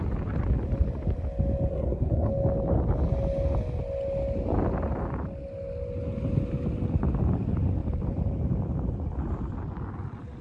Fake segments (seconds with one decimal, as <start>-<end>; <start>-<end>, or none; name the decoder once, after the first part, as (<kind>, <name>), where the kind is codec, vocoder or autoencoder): 1.7-2.3 (codec, SNAC)